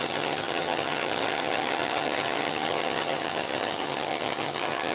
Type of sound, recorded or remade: remade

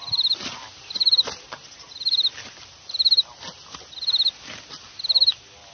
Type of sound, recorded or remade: recorded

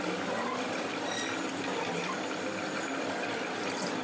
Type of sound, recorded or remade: recorded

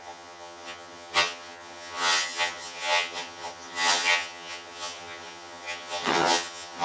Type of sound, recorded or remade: remade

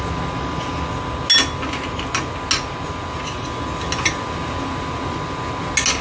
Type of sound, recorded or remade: recorded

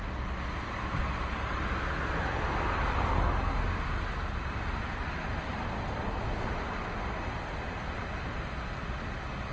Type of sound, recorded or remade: recorded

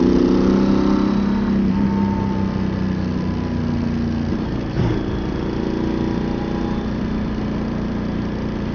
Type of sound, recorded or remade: recorded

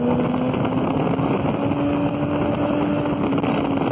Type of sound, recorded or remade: recorded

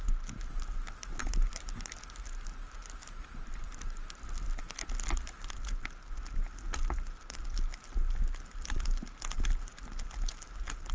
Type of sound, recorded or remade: recorded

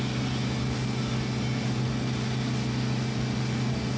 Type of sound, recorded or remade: recorded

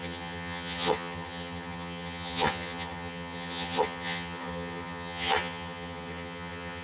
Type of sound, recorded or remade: remade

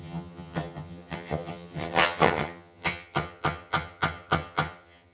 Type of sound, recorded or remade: remade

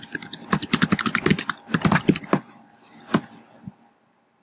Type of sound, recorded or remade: recorded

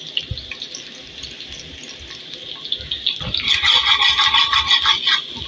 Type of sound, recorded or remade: recorded